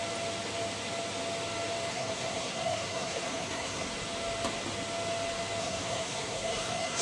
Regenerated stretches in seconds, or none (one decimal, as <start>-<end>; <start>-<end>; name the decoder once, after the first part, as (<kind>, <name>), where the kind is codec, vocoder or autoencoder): 1.9-3.9 (codec, SNAC); 5.6-7.0